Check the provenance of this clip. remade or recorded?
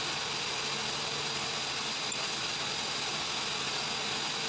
recorded